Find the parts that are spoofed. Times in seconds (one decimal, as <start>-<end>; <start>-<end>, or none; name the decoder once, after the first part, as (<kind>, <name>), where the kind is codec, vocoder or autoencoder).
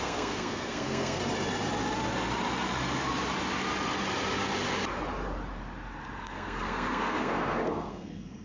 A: 0.0-1.2 (codec, SNAC); 6.2-8.4